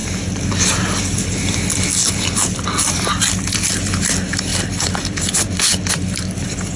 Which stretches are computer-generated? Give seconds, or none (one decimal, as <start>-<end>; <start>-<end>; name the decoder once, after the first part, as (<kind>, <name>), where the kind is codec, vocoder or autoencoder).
4.5-6.8 (vocoder, BigVGAN v2)